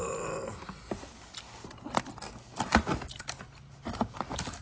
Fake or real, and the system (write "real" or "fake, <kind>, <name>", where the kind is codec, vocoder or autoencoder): real